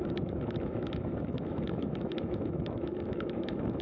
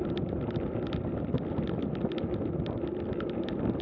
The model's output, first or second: first